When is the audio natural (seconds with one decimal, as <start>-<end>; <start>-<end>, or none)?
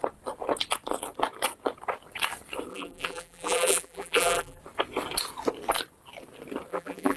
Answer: 0.0-2.7; 4.6-6.7